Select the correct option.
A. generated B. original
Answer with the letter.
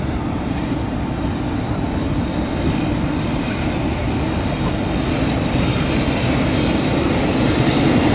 B